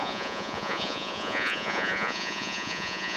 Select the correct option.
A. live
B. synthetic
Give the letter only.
B